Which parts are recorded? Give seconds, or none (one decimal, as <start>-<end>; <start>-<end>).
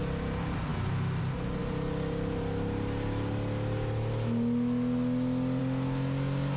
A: 0.0-6.6